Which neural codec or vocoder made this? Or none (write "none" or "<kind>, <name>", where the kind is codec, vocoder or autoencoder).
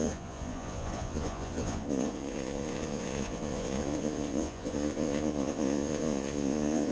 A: vocoder, Vocos